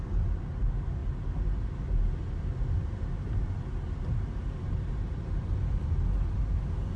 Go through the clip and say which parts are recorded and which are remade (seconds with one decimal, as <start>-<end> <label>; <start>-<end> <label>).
0.0-7.0 recorded